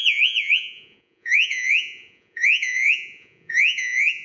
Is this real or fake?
fake